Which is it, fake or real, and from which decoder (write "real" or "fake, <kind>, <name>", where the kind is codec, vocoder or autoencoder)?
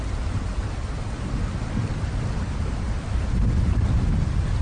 real